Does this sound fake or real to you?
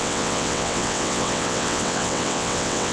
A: fake